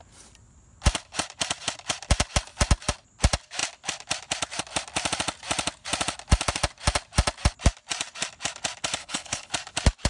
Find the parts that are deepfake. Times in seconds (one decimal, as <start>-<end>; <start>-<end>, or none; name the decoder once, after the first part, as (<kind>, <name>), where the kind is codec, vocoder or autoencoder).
9.0-9.5 (codec, HILCodec)